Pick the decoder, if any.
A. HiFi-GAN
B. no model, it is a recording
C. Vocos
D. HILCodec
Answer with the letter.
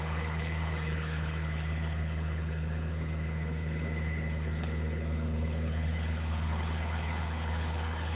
D